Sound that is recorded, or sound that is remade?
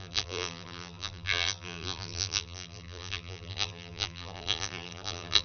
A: remade